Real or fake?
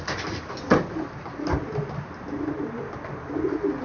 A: real